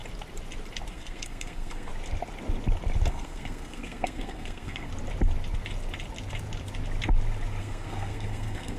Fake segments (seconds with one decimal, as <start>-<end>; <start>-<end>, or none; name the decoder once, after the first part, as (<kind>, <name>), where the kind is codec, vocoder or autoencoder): 0.9-1.9 (codec, SNAC); 3.1-4.9; 7.6-8.8